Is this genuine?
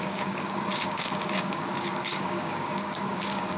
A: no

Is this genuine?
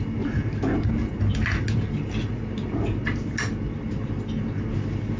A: yes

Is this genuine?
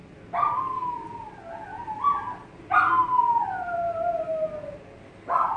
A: yes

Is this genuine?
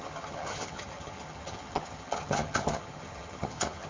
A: no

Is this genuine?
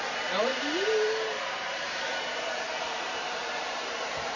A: no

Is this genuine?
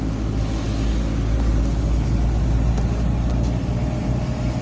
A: yes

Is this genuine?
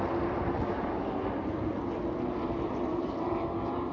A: yes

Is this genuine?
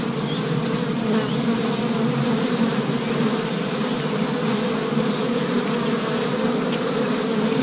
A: yes